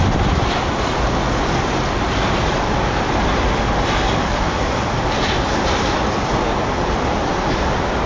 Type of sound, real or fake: real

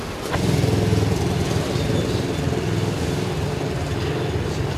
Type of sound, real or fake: real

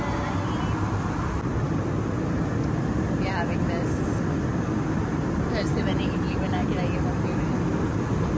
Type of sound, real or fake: real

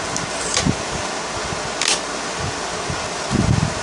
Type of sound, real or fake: real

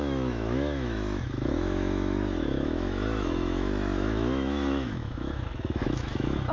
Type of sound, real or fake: fake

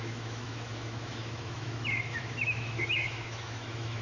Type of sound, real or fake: fake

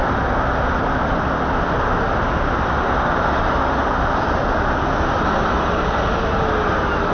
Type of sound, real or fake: real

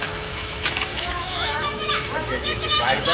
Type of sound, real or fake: fake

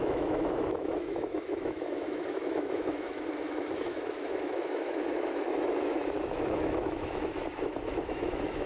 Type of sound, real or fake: fake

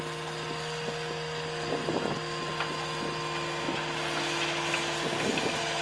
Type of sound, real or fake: real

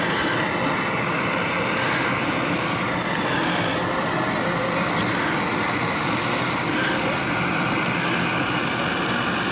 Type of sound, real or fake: real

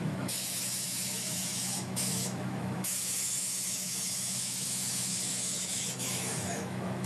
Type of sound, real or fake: fake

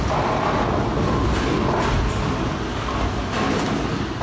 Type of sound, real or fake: real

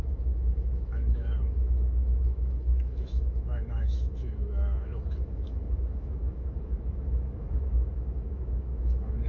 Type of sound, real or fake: fake